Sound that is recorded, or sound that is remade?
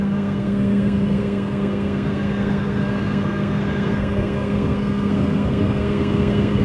remade